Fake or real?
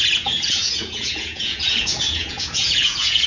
fake